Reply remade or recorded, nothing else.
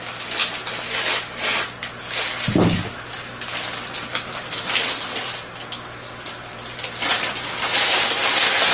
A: recorded